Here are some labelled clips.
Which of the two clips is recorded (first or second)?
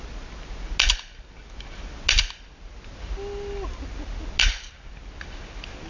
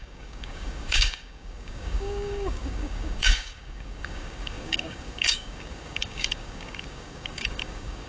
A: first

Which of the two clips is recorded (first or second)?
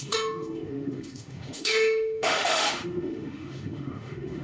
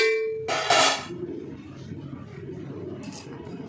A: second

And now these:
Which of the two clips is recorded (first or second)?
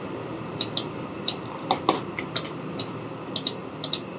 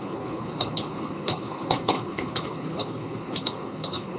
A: first